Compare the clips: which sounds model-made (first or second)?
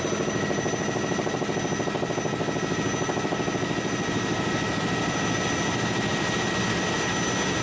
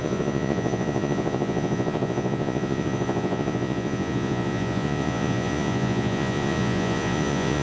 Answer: second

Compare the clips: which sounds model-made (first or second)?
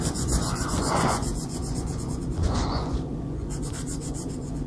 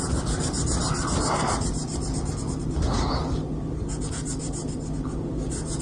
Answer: first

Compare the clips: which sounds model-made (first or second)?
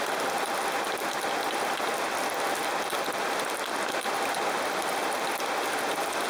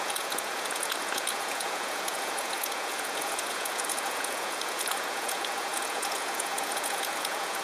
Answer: second